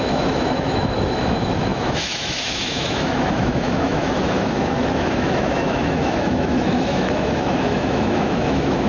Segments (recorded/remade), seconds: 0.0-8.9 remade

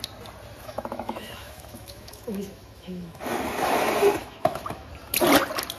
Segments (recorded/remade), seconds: 0.0-0.6 recorded; 0.6-3.2 remade; 3.2-4.2 recorded; 4.2-4.9 remade; 4.9-5.8 recorded

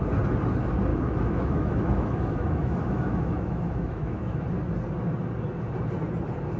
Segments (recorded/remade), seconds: 0.0-0.9 recorded; 0.9-4.4 remade; 4.4-6.6 recorded

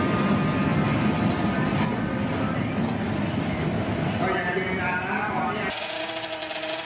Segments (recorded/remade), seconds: 0.0-6.8 recorded

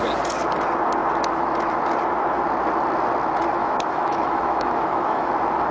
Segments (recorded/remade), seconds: 0.0-3.6 recorded; 3.6-5.3 remade; 5.3-5.7 recorded

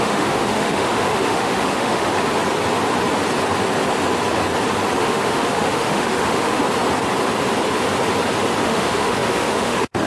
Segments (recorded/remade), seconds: 0.0-2.1 remade; 2.1-5.0 recorded; 5.0-6.6 remade; 6.6-8.6 recorded; 8.6-10.1 remade